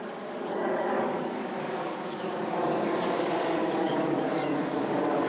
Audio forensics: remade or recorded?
remade